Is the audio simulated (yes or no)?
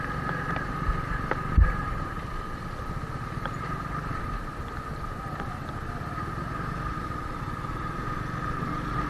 no